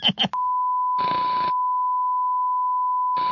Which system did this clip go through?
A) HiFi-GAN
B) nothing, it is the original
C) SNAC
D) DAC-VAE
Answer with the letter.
B